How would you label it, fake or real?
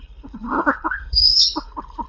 fake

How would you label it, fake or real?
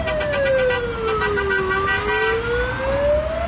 real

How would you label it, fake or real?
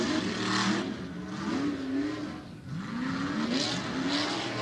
real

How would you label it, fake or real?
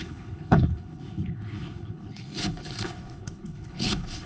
fake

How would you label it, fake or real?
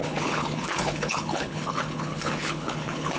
fake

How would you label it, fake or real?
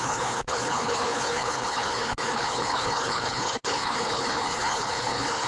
fake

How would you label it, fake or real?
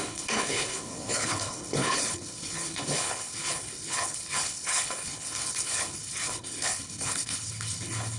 fake